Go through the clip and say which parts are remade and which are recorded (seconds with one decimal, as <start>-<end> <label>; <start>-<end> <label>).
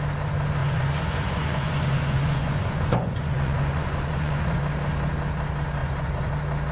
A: 0.0-0.6 recorded; 0.6-4.6 remade; 4.6-5.8 recorded; 5.8-6.3 remade; 6.3-6.7 recorded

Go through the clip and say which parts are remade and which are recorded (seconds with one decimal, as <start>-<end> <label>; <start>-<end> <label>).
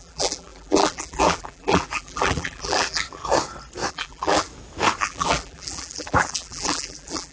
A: 0.0-3.2 remade; 3.2-3.9 recorded; 3.9-4.5 remade; 4.5-5.0 recorded; 5.0-7.3 remade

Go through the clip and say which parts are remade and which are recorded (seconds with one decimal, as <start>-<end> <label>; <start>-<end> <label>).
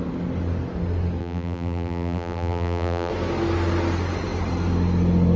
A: 0.0-1.2 recorded; 1.2-3.1 remade; 3.1-5.4 recorded